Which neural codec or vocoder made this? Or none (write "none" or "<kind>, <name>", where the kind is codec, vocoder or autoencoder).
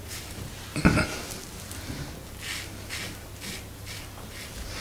none